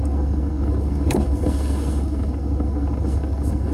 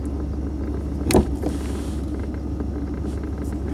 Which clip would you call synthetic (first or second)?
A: first